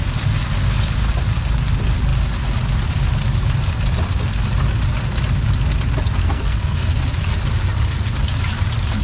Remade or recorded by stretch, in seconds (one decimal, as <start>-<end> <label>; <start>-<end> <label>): 0.0-6.2 recorded; 6.2-6.9 remade; 6.9-9.0 recorded